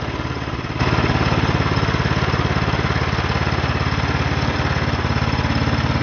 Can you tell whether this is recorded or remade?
recorded